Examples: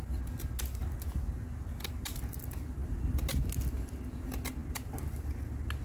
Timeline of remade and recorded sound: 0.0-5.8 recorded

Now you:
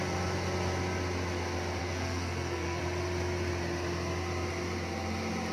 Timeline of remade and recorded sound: 0.0-1.8 recorded; 1.8-2.8 remade; 2.8-5.5 recorded

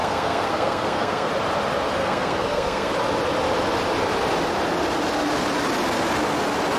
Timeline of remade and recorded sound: 0.0-1.3 remade; 1.3-2.0 recorded; 2.0-2.9 remade; 2.9-6.8 recorded